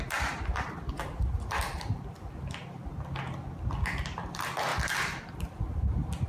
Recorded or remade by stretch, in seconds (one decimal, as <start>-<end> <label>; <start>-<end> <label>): 0.0-6.3 recorded